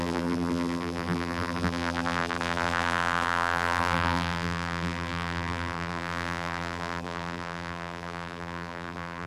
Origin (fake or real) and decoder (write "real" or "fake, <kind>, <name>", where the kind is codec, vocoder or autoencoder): fake, vocoder, BigVGAN v2